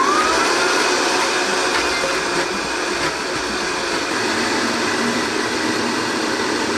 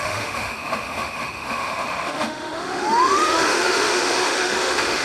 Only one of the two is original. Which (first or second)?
first